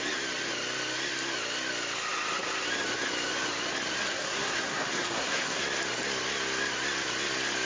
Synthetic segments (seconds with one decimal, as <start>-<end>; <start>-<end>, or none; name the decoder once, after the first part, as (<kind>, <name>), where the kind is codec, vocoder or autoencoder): 4.1-5.6 (codec, SNAC)